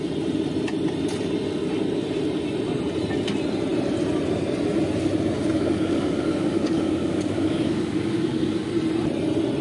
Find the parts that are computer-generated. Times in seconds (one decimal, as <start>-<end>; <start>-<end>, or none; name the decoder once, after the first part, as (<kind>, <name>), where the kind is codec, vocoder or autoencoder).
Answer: 5.4-8.7 (codec, DAC)